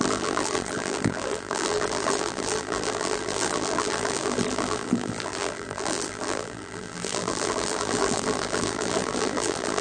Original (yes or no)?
no